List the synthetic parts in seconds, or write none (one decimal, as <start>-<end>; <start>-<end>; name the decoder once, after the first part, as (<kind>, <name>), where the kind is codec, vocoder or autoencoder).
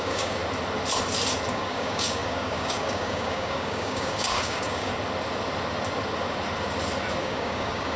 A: 0.0-0.4 (codec, DAC); 1.5-4.9; 7.2-8.0